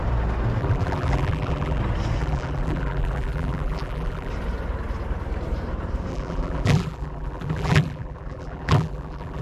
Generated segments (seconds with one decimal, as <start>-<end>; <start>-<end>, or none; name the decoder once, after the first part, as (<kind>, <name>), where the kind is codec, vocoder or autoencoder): 0.6-1.8 (vocoder, BigVGAN v2); 2.2-4.3; 6.1-9.4